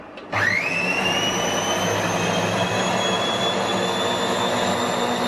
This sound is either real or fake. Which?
real